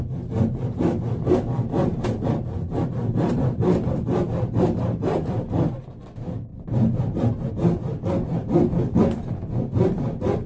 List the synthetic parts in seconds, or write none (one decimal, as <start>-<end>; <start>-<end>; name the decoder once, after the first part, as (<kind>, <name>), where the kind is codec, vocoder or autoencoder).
1.9-5.6 (vocoder, BigVGAN v2); 6.5-7.5

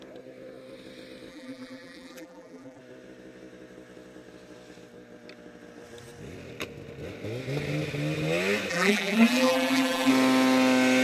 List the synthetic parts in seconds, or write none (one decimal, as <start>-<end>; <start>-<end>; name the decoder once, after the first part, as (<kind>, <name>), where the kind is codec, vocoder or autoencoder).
1.3-2.8 (vocoder, BigVGAN v2); 8.7-10.1

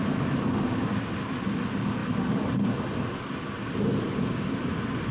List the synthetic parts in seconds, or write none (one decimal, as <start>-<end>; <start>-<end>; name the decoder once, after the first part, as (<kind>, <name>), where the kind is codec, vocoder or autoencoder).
none

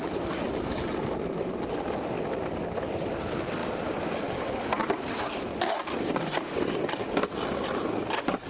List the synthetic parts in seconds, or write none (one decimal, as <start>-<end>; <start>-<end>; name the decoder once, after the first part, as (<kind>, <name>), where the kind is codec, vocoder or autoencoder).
3.6-4.3 (vocoder, BigVGAN v2); 5.5-6.1

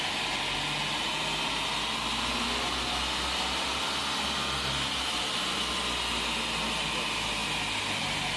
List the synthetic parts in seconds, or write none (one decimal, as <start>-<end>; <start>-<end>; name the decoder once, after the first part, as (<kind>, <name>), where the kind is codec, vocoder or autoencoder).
none

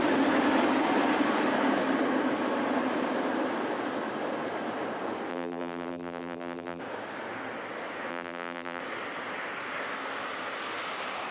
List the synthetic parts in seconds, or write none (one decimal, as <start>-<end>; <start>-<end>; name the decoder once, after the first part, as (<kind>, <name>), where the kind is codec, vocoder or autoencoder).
5.3-6.8 (vocoder, BigVGAN v2); 8.1-8.8

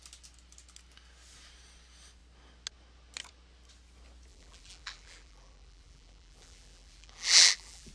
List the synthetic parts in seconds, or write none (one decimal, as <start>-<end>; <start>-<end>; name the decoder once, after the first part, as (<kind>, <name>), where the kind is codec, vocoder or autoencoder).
4.3-7.9 (vocoder, BigVGAN v2)